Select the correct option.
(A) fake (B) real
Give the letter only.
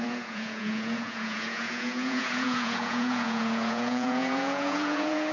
A